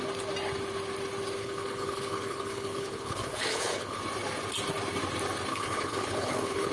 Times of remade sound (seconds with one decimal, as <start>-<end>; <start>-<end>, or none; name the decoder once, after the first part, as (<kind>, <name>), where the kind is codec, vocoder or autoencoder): 1.4-4.0 (codec, HILCodec); 5.5-6.7